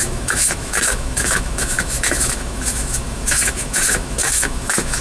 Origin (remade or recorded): remade